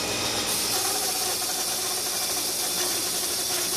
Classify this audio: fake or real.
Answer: real